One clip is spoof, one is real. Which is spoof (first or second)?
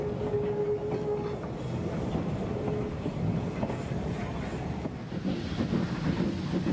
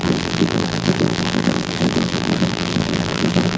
second